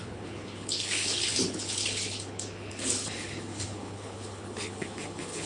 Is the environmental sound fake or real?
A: fake